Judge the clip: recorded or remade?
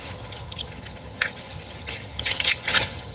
remade